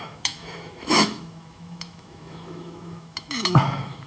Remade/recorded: remade